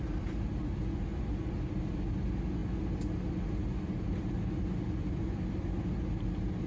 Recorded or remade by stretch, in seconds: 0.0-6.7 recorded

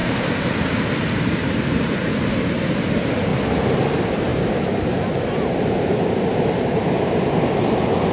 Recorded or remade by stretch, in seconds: 0.0-2.3 remade; 2.3-4.3 recorded; 4.3-7.0 remade; 7.0-8.1 recorded

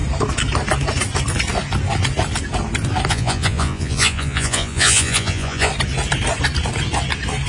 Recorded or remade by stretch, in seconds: 0.0-3.1 recorded; 3.1-5.7 remade; 5.7-7.5 recorded

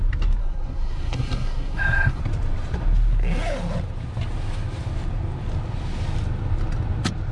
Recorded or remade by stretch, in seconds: 0.0-0.4 recorded; 0.4-2.2 remade; 2.2-7.3 recorded

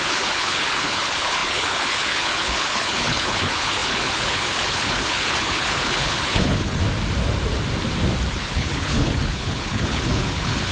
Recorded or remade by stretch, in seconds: 0.0-6.8 remade; 6.8-8.3 recorded; 8.3-10.7 remade

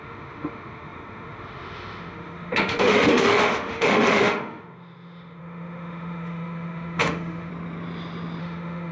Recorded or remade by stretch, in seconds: 0.0-7.5 remade; 7.5-8.4 recorded; 8.4-8.9 remade